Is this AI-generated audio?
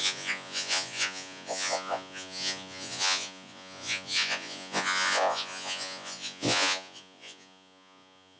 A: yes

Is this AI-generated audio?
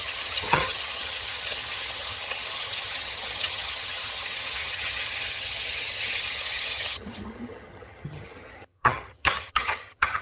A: yes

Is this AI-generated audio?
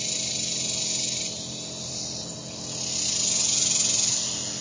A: no